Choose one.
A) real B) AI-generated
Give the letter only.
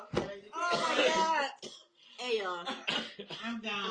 A